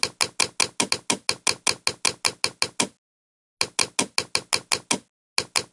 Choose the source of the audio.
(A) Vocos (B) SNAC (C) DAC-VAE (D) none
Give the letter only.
D